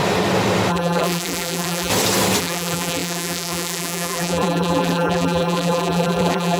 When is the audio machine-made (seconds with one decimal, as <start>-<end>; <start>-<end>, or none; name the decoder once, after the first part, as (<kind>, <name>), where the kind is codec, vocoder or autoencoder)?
0.7-1.9 (vocoder, BigVGAN v2); 2.4-6.6